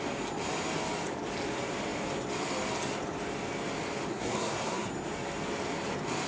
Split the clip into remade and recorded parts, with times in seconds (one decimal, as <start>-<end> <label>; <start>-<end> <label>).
0.0-4.1 recorded; 4.1-4.9 remade; 4.9-6.3 recorded